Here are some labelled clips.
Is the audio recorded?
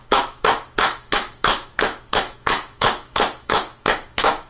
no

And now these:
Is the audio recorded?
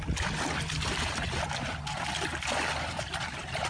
yes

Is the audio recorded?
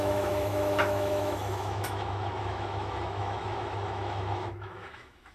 no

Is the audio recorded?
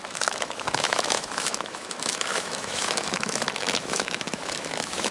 no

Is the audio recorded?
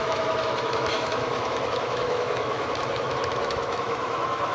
no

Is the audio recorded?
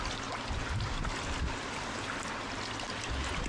yes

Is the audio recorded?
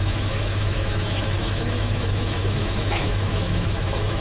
no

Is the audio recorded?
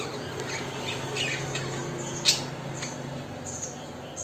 yes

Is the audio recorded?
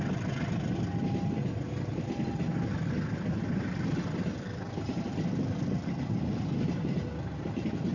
yes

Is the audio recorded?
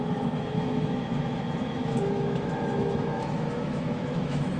no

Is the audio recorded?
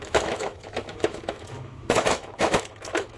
no